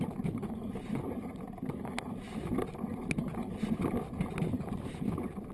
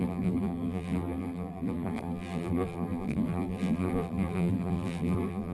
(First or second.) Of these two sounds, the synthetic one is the second